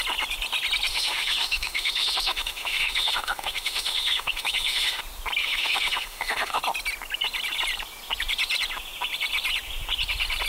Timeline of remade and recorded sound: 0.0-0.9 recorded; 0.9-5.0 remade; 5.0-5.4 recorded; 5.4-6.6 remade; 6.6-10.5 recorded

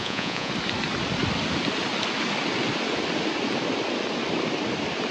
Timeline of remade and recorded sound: 0.0-0.5 remade; 0.5-5.1 recorded

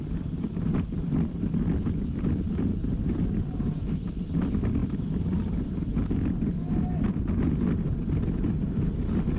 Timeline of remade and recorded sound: 0.0-2.7 recorded; 2.7-4.2 remade; 4.2-9.4 recorded

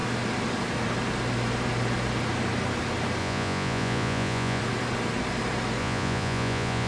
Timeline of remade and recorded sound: 0.0-3.2 recorded; 3.2-4.6 remade; 4.6-5.8 recorded; 5.8-6.9 remade

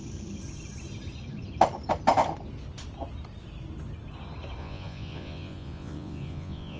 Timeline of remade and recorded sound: 0.0-4.6 recorded; 4.6-6.8 remade

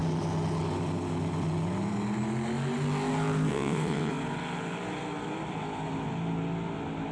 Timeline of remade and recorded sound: 0.0-3.5 recorded; 3.5-4.1 remade; 4.1-7.1 recorded

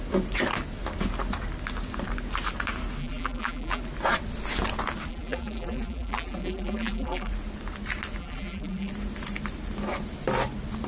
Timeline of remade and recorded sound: 0.0-3.0 recorded; 3.0-3.8 remade; 3.8-5.1 recorded; 5.1-7.3 remade; 7.3-8.2 recorded; 8.2-8.9 remade; 8.9-10.9 recorded

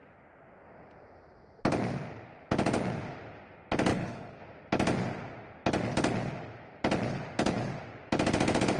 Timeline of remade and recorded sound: 0.0-3.9 recorded; 3.9-4.4 remade; 4.4-8.8 recorded